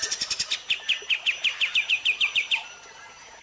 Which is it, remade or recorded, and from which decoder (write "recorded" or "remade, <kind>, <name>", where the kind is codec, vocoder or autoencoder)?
recorded